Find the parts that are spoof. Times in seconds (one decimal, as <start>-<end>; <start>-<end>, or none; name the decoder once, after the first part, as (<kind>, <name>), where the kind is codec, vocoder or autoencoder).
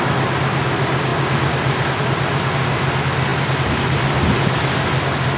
none